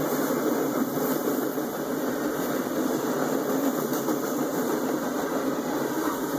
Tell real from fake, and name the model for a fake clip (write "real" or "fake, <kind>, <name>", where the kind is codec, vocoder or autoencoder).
fake, vocoder, BigVGAN v2